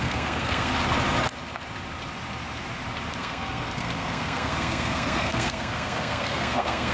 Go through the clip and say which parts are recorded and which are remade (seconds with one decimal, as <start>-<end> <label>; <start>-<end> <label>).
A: 0.0-0.7 remade; 0.7-3.2 recorded; 3.2-6.9 remade